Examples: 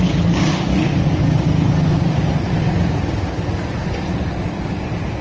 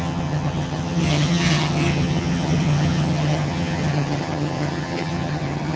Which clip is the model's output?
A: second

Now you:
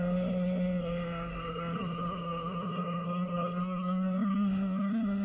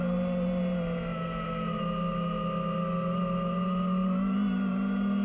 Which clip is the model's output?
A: first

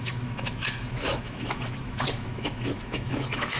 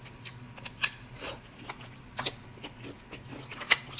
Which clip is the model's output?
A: first